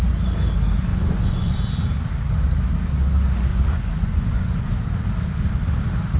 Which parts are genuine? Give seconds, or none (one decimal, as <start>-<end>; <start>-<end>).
0.0-0.9; 1.6-3.5; 4.7-6.2

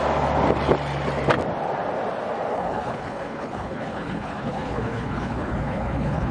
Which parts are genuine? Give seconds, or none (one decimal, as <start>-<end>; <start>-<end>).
0.0-2.5

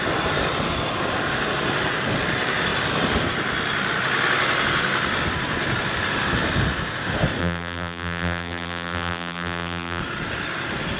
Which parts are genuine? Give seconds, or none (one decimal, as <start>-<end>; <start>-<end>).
0.0-7.4; 10.0-11.0

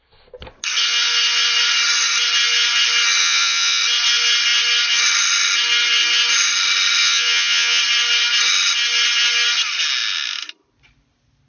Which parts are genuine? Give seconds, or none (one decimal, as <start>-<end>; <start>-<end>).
0.0-3.2; 3.8-7.0; 7.8-11.5